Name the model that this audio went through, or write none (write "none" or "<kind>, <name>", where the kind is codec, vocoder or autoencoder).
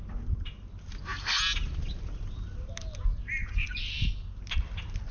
none